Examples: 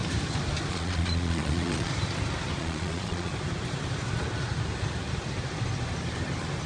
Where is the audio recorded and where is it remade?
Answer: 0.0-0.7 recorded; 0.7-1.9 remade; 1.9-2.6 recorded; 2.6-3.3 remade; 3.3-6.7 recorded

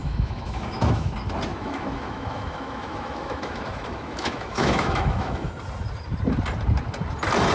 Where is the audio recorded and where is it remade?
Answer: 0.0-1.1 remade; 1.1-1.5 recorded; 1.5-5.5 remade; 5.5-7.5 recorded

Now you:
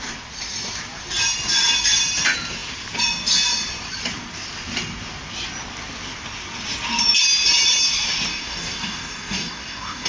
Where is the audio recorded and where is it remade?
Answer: 0.0-8.3 recorded; 8.3-10.1 remade

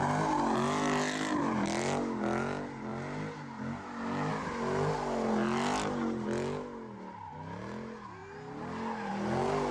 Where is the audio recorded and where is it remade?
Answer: 0.0-9.7 recorded

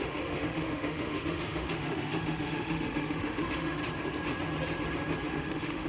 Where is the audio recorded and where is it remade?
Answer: 0.0-3.8 remade; 3.8-5.3 recorded; 5.3-5.9 remade

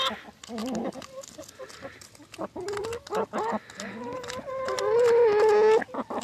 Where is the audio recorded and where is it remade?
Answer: 0.0-0.6 recorded; 0.6-2.1 remade; 2.1-2.9 recorded; 2.9-3.7 remade; 3.7-6.2 recorded

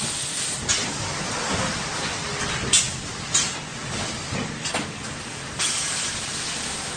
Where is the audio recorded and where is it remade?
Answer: 0.0-7.0 recorded